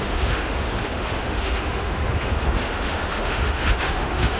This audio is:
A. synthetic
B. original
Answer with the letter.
A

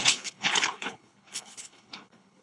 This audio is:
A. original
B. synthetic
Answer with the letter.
B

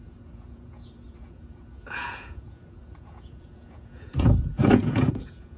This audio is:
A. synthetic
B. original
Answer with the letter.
A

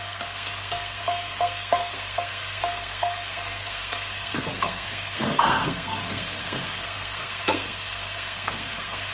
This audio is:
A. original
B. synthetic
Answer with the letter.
B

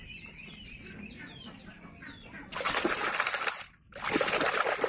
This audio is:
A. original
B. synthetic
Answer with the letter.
A